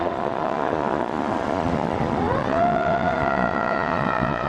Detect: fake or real fake